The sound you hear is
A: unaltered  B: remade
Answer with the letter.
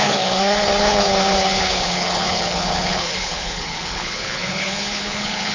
B